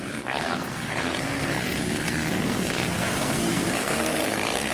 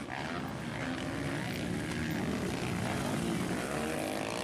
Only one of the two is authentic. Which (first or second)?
second